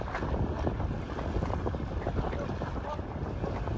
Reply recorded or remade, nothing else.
recorded